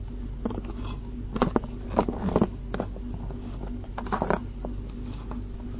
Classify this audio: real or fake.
real